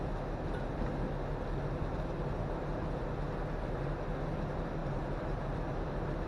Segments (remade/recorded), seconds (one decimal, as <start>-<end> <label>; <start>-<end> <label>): 0.0-4.8 recorded; 4.8-5.4 remade; 5.4-6.3 recorded